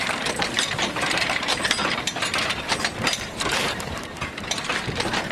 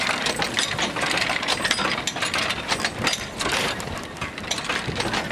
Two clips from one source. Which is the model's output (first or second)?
first